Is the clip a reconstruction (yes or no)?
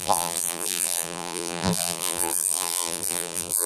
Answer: yes